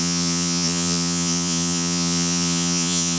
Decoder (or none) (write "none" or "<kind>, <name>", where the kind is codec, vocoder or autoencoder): vocoder, Vocos